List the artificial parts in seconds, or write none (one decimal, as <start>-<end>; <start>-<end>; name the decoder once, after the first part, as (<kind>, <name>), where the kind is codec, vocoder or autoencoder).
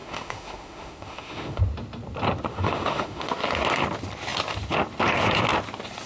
0.0-1.6 (autoencoder, DAC-VAE); 2.5-3.3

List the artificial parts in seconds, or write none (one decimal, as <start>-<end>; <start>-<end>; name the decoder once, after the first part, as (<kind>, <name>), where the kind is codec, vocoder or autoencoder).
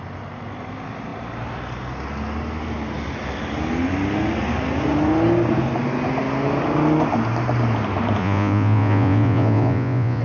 8.2-10.2 (vocoder, Vocos)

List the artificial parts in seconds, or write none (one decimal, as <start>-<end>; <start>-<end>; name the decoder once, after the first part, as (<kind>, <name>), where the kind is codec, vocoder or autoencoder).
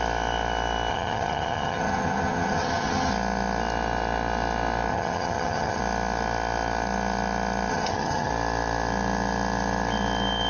0.9-3.1 (vocoder, HiFi-GAN); 4.9-5.8; 7.7-8.3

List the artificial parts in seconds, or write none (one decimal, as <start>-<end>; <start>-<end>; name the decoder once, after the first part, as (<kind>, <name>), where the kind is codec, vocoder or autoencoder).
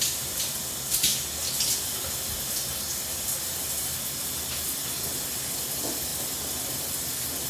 6.1-7.5 (vocoder, BigVGAN v2)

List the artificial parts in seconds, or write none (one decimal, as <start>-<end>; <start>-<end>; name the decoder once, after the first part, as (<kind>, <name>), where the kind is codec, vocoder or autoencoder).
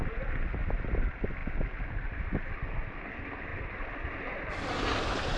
none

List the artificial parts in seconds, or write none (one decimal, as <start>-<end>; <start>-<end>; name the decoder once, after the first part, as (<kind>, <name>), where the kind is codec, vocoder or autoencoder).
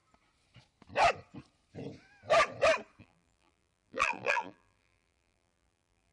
3.0-6.1 (vocoder, BigVGAN v2)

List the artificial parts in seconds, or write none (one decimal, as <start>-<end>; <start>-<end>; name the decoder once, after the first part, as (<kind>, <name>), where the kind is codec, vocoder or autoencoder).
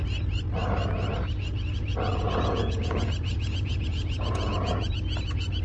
2.1-4.9 (vocoder, Vocos)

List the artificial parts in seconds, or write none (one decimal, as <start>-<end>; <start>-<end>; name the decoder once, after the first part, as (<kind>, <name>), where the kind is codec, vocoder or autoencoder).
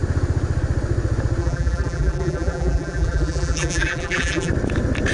1.4-4.5 (vocoder, BigVGAN v2)